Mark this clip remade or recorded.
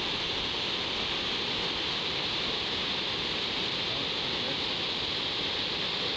recorded